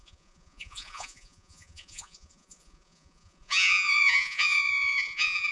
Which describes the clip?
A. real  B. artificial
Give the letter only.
B